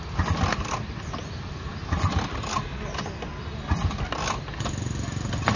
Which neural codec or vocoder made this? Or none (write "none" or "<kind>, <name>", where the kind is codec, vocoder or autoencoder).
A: none